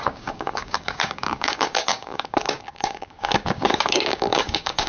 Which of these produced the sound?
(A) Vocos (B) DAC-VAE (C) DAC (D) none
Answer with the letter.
C